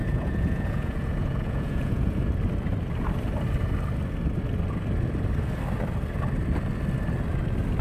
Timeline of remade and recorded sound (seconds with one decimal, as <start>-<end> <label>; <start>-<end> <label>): 0.0-2.2 remade; 2.2-7.8 recorded